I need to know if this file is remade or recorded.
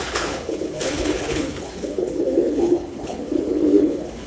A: remade